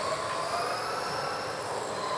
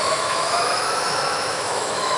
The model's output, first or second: second